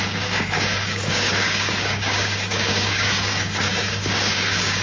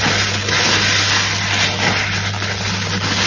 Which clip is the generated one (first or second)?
first